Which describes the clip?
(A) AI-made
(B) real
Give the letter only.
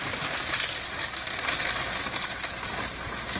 B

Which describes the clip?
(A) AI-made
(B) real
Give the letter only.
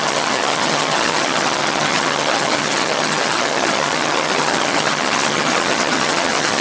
A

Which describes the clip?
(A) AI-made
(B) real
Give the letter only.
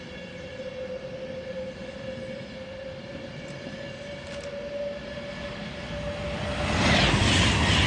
B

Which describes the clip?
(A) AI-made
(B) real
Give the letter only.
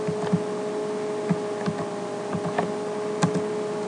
B